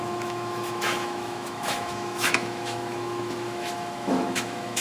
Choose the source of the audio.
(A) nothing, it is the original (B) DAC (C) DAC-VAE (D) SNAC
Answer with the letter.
C